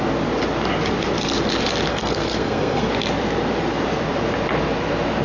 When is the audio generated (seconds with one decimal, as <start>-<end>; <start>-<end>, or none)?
1.9-2.9

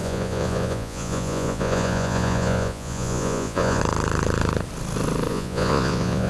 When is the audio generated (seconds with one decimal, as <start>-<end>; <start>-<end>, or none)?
0.0-3.8; 5.3-6.3

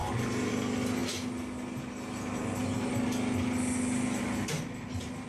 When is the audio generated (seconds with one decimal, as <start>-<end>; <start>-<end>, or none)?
none

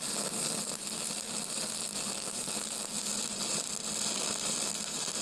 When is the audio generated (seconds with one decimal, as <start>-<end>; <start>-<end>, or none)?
none

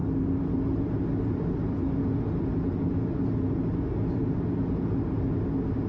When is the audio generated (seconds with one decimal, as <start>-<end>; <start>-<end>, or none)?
none